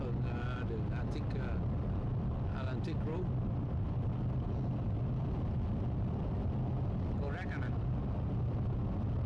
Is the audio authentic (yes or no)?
yes